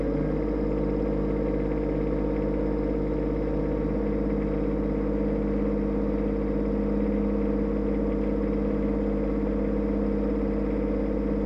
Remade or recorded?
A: recorded